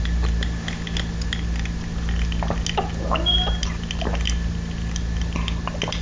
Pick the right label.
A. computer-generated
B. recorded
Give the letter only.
B